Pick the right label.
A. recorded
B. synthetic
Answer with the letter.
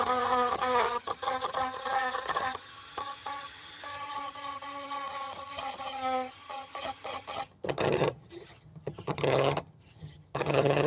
B